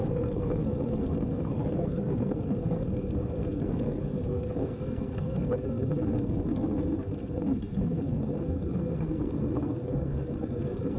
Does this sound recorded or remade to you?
remade